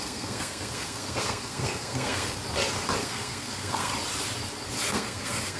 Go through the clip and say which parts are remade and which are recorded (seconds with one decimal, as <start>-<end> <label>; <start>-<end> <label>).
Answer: 0.0-2.4 remade; 2.4-3.0 recorded; 3.0-3.9 remade; 3.9-4.9 recorded; 4.9-5.6 remade